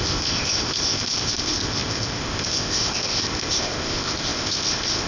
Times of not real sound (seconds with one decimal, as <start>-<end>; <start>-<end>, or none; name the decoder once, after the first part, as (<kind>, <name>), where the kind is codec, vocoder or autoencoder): 0.0-5.1 (codec, ZipCodec)